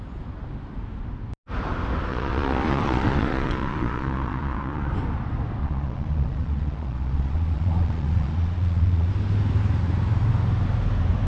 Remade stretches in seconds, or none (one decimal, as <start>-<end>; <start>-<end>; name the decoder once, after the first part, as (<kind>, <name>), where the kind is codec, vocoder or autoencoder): 2.1-4.9 (vocoder, Vocos); 5.6-9.1

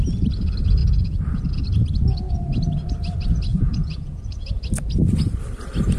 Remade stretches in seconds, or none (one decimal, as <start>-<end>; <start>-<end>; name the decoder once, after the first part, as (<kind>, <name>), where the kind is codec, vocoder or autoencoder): 3.5-4.5 (vocoder, Vocos)

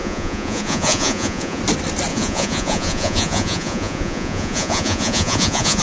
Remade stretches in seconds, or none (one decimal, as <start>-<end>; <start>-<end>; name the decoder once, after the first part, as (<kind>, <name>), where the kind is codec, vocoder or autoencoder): 0.0-1.6 (vocoder, Vocos); 2.1-5.8